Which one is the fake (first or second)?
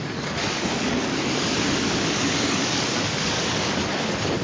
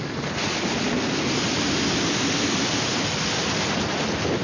first